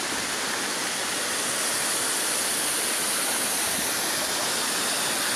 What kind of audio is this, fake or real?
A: real